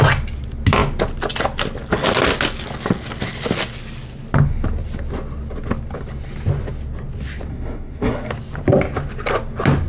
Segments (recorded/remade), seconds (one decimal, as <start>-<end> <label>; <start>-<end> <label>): 0.0-7.5 recorded; 7.5-8.3 remade; 8.3-9.9 recorded